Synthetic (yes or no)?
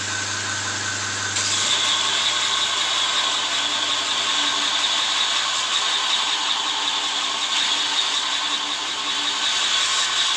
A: no